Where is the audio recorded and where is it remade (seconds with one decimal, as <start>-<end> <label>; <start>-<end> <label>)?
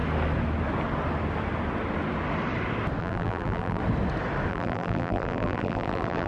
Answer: 0.0-3.0 recorded; 3.0-3.8 remade; 3.8-4.5 recorded; 4.5-6.3 remade